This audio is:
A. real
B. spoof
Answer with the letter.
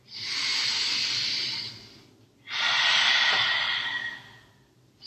A